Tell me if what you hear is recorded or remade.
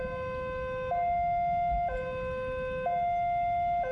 recorded